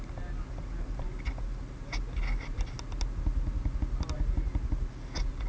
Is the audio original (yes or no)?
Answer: yes